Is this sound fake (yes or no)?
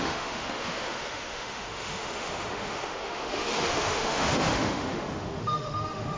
yes